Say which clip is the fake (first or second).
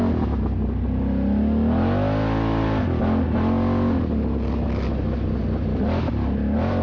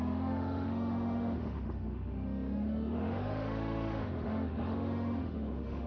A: second